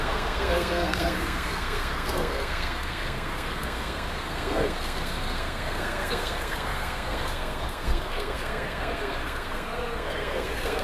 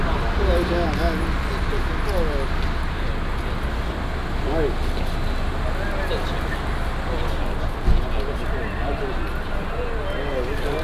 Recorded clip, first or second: second